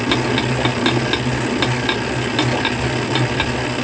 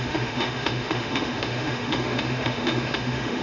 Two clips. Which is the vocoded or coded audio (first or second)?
second